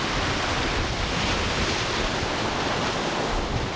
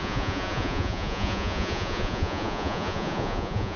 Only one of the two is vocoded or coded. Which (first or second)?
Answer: second